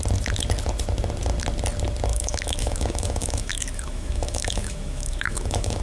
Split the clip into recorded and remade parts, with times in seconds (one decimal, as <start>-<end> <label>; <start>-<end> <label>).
0.0-2.1 recorded; 2.1-5.8 remade